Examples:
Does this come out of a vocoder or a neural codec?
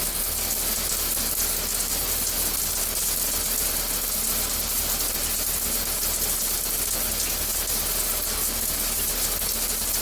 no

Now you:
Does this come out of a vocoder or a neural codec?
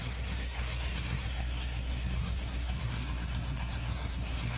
yes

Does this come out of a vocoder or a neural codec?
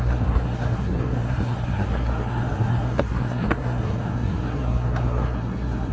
yes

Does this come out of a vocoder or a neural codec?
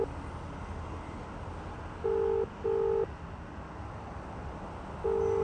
no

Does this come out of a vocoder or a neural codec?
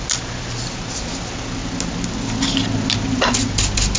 no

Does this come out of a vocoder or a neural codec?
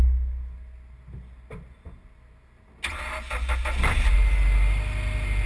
no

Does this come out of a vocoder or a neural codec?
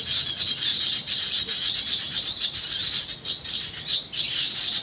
no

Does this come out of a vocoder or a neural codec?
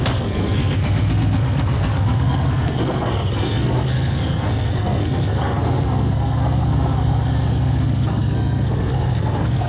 yes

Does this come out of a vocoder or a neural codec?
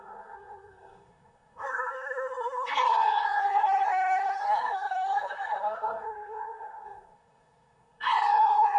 yes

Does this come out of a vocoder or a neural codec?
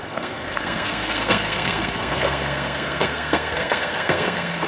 yes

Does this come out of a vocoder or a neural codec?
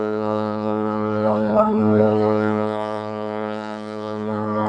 yes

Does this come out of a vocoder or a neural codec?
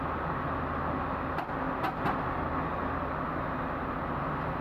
no